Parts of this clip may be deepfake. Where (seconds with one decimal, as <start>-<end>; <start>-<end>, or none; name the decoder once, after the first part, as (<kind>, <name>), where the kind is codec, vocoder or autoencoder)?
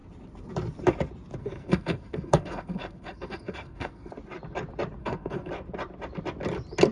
1.4-4.1 (codec, SNAC); 5.0-5.5